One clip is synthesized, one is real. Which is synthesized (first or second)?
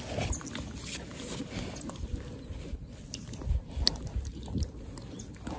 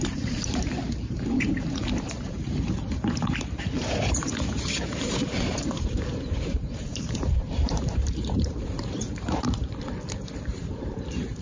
second